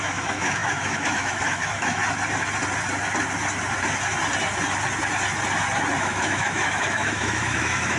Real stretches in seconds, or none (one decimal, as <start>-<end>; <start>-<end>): 2.0-6.0